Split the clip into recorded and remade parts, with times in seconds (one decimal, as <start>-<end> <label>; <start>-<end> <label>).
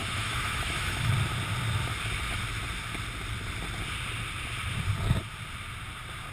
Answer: 0.0-1.1 remade; 1.1-6.3 recorded